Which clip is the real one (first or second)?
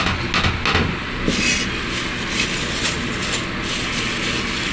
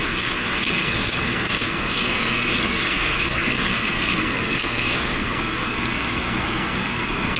first